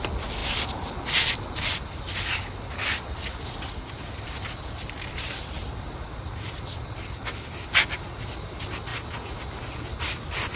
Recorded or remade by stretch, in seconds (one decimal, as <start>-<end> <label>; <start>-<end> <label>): 0.0-10.6 recorded